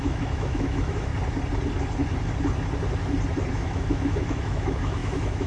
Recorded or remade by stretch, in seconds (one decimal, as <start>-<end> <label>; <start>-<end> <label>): 0.0-1.1 remade; 1.1-3.5 recorded; 3.5-5.5 remade